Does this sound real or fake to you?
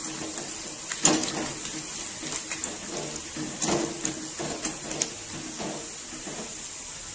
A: real